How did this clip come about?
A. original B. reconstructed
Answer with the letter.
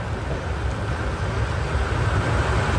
A